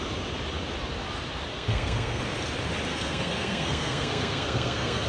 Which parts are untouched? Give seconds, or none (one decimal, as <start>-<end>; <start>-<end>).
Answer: 0.0-1.5; 2.2-2.9